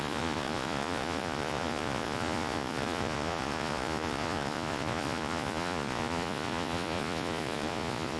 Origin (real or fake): fake